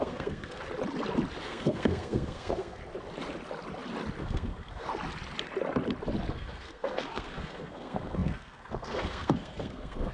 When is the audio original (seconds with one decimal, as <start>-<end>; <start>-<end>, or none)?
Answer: 0.6-1.4; 2.8-4.2; 4.9-6.3